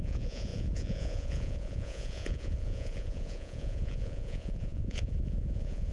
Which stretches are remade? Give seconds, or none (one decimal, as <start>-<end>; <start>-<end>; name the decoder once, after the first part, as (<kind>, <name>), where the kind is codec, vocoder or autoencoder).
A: 0.0-5.9 (vocoder, Vocos)